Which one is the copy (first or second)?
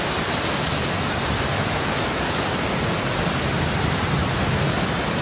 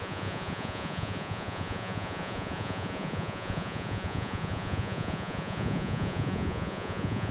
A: second